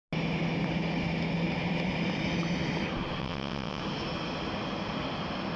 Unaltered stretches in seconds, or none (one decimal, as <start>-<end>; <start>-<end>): 0.0-3.2; 3.8-5.6